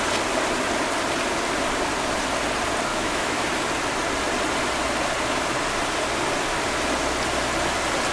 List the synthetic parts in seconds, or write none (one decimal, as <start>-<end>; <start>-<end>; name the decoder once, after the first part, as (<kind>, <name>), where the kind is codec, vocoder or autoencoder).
2.9-3.4 (autoencoder, DAC-VAE)